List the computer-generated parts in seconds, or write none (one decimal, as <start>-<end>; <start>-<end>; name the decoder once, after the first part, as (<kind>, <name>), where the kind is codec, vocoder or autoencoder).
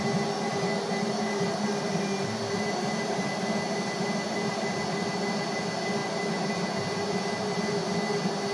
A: none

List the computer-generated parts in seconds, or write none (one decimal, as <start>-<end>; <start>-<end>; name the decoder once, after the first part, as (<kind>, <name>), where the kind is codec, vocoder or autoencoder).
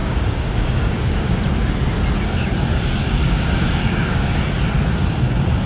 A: 0.0-1.4 (codec, DAC); 3.2-4.4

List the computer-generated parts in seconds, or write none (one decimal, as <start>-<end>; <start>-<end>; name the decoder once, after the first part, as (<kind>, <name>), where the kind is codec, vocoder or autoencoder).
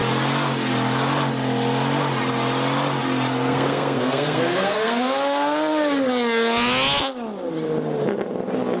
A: 3.3-5.1 (codec, SNAC)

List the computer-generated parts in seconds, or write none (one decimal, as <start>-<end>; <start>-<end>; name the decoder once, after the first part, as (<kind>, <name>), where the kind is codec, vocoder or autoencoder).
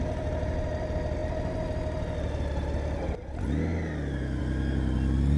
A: none